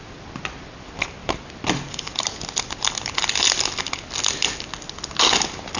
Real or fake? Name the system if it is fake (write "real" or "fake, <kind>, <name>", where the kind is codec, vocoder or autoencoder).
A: real